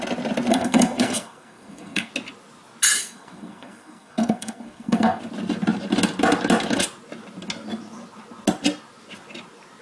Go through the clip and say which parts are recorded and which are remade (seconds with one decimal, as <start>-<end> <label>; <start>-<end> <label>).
0.0-0.5 recorded; 0.5-2.1 remade; 2.1-3.0 recorded; 3.0-5.2 remade; 5.2-9.8 recorded